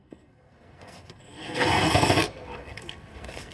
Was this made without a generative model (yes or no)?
no